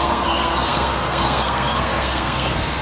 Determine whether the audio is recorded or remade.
remade